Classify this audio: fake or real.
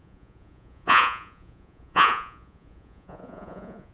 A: fake